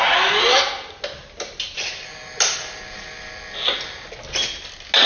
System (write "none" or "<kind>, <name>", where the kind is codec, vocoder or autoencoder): none